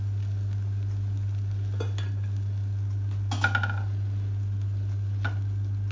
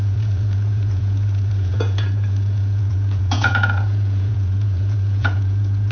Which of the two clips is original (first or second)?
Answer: first